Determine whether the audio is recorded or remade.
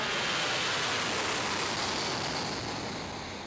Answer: recorded